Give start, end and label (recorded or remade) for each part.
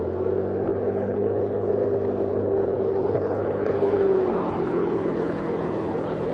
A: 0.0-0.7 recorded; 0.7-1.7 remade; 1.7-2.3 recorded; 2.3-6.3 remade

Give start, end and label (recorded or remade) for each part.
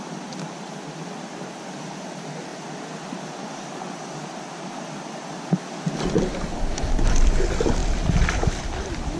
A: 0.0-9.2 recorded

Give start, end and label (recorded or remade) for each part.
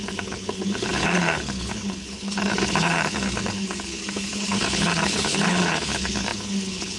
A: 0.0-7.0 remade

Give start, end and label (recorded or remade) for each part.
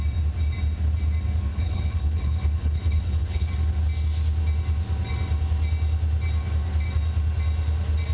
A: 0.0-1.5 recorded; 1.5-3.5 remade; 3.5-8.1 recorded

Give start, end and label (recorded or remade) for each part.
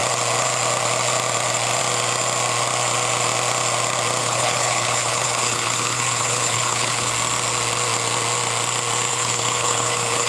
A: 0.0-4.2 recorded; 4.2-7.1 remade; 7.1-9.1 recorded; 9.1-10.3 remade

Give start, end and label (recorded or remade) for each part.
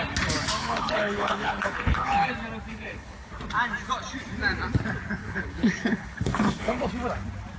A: 0.0-0.6 recorded; 0.6-2.3 remade; 2.3-2.7 recorded; 2.7-3.3 remade; 3.3-5.2 recorded; 5.2-6.9 remade; 6.9-7.6 recorded